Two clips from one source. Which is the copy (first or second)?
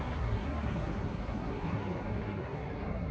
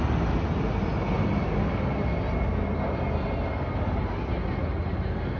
first